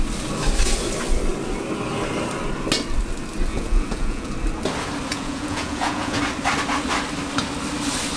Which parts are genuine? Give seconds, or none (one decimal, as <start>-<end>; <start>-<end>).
0.0-3.5; 4.3-5.1; 6.2-8.2